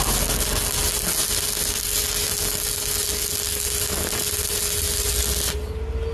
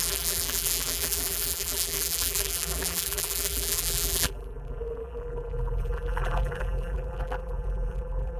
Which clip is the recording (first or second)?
first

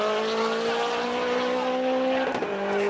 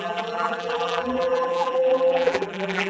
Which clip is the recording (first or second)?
first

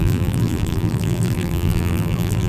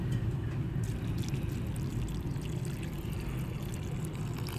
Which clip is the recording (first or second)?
second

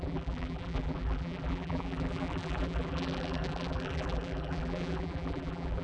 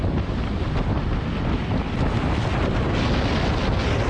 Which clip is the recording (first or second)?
second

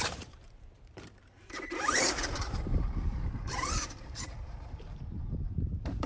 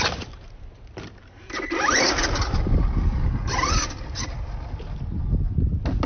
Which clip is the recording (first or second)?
second